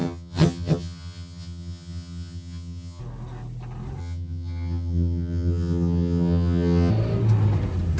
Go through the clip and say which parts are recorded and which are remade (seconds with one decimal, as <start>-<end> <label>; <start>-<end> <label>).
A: 0.0-3.0 remade; 3.0-4.0 recorded; 4.0-6.9 remade; 6.9-8.0 recorded